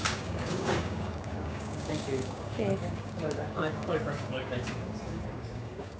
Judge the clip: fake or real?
fake